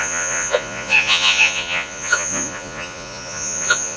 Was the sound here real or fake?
fake